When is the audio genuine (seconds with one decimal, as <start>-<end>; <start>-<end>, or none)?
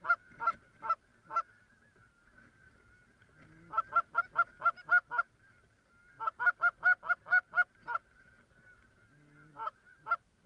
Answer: 0.0-10.5